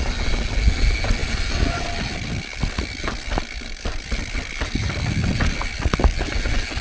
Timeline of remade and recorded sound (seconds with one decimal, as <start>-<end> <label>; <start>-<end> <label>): 0.0-1.2 recorded; 1.2-5.0 remade; 5.0-6.8 recorded